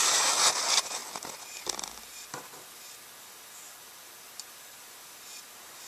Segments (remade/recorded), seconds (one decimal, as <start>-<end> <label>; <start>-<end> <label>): 0.0-5.9 recorded